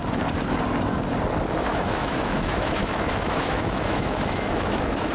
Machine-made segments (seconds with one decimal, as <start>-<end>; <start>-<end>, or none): 1.7-5.1